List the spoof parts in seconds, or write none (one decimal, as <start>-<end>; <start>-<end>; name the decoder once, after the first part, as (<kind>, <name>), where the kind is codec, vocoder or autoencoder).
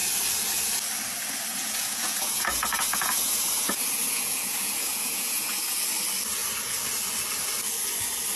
1.5-5.6 (vocoder, Vocos)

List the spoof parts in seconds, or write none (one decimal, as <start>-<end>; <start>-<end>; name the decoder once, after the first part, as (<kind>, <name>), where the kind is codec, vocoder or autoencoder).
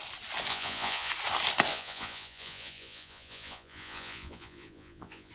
0.5-1.1 (vocoder, Vocos); 1.7-5.3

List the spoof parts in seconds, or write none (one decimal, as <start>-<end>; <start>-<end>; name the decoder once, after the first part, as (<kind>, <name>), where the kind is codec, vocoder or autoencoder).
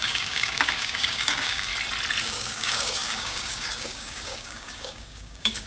0.0-1.7 (codec, DAC); 2.2-5.7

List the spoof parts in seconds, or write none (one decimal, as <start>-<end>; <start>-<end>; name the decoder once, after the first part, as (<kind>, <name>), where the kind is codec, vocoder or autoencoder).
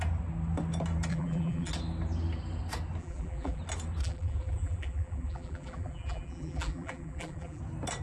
1.1-1.7 (vocoder, BigVGAN v2); 3.0-3.6; 4.0-7.6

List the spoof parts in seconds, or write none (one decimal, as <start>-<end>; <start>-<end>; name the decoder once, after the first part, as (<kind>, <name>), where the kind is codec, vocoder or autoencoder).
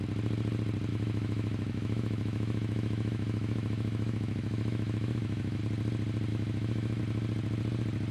0.9-5.6 (autoencoder, DAC-VAE); 6.3-7.0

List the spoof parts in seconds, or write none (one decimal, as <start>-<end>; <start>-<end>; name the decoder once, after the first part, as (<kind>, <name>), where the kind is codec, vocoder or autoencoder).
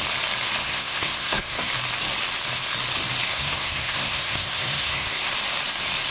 0.6-1.7 (codec, SNAC); 3.3-5.3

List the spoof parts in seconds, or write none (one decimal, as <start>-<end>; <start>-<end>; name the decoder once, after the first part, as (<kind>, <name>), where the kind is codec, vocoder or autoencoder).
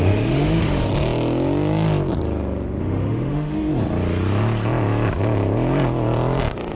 0.0-0.9 (autoencoder, DAC-VAE); 2.8-3.7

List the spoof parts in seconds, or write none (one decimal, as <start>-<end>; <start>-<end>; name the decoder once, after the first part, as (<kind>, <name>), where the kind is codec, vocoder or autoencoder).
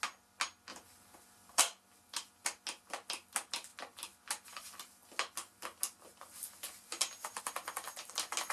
0.7-1.6 (vocoder, BigVGAN v2)